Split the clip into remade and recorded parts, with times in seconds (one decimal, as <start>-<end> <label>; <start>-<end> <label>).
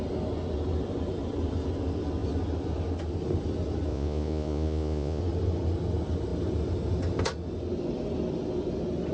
0.0-3.9 recorded; 3.9-5.2 remade; 5.2-9.1 recorded